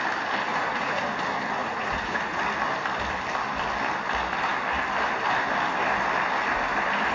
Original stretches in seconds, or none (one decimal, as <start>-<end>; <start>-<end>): 0.0-0.5; 1.0-1.6; 2.4-7.1